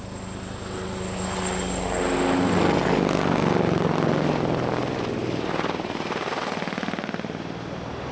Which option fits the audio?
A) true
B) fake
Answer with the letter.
A